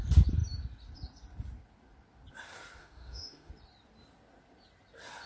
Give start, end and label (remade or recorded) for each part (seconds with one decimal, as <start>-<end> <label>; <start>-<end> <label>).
0.0-2.8 recorded; 2.8-3.5 remade; 3.5-5.3 recorded